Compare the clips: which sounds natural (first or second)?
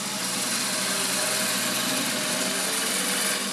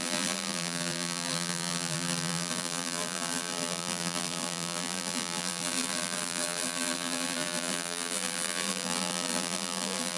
first